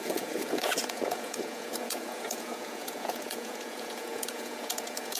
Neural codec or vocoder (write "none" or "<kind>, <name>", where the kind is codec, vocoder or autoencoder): vocoder, Vocos